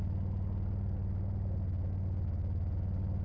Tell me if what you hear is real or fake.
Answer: real